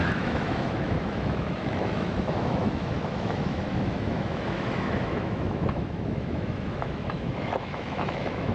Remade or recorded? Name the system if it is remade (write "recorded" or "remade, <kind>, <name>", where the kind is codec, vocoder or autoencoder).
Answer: remade, autoencoder, DAC-VAE